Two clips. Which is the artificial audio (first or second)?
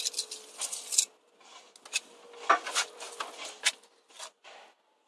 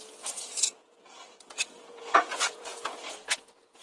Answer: second